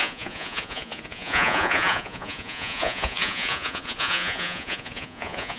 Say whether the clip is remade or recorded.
remade